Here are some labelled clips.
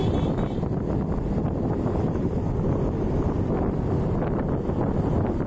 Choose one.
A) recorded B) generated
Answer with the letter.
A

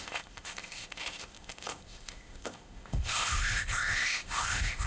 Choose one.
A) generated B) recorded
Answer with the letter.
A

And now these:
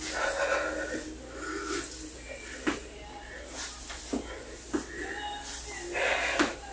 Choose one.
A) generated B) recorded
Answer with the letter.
B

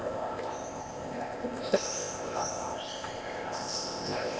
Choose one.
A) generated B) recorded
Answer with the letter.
A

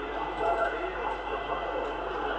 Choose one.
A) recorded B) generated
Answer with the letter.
A